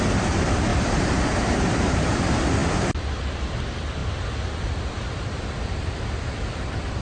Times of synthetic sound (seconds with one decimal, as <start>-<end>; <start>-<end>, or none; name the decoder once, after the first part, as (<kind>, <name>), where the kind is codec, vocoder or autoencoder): 0.7-2.2 (vocoder, BigVGAN v2)